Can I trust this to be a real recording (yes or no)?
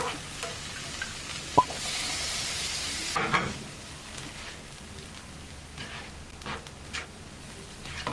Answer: yes